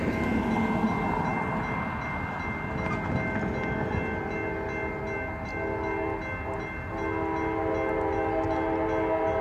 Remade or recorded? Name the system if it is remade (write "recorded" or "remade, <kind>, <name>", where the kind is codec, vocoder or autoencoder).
recorded